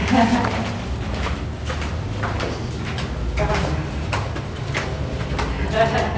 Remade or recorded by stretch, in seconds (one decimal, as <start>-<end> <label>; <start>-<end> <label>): 0.0-6.2 recorded